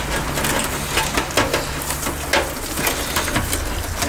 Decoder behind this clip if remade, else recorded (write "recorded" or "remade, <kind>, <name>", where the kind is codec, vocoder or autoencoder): recorded